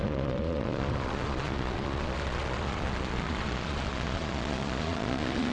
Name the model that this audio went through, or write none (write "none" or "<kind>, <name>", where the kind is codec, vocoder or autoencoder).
vocoder, Vocos